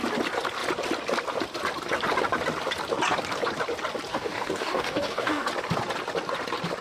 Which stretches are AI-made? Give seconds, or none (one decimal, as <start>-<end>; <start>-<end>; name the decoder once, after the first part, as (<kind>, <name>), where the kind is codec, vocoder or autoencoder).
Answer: 4.1-5.5 (codec, DAC)